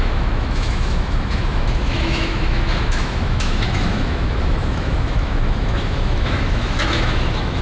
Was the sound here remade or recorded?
remade